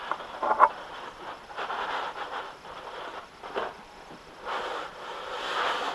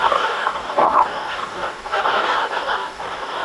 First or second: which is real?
first